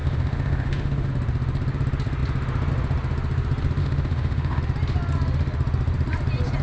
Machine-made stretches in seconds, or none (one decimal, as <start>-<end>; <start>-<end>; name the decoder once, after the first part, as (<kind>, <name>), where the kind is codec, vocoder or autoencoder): 0.0-1.1 (autoencoder, DAC-VAE); 3.8-4.6

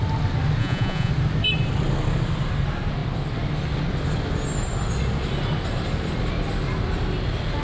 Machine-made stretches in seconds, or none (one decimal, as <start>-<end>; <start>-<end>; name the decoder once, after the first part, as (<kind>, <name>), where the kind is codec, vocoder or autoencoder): 0.6-1.1 (vocoder, Vocos)

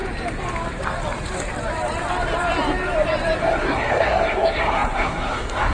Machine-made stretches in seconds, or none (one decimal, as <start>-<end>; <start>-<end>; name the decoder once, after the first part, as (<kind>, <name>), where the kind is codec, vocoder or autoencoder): 3.4-5.7 (codec, SNAC)